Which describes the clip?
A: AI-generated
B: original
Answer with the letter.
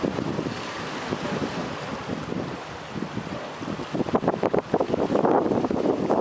B